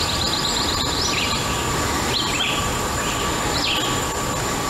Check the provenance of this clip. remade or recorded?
recorded